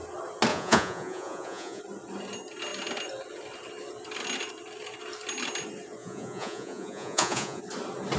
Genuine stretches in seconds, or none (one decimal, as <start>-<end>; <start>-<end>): 0.0-0.5; 1.8-6.0; 7.6-8.2